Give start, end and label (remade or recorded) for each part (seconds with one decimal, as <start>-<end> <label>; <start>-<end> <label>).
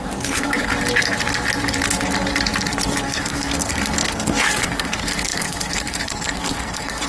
0.0-0.7 remade; 0.7-3.0 recorded; 3.0-7.1 remade